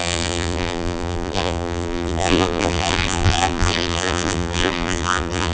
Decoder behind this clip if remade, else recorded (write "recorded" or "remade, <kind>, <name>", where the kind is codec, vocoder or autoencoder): remade, vocoder, BigVGAN v2